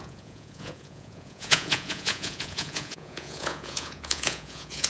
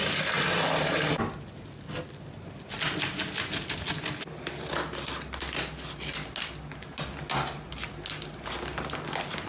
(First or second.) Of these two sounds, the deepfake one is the first